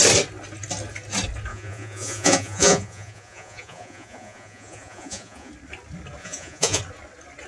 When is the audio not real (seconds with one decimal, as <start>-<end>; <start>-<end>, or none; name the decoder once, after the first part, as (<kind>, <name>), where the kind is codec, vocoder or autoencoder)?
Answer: 1.5-5.5 (vocoder, Vocos); 6.2-6.8